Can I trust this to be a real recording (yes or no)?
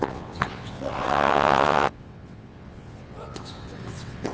no